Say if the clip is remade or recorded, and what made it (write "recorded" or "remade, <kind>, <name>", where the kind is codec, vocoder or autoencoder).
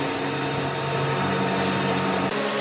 recorded